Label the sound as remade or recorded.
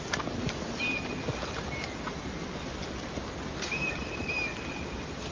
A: recorded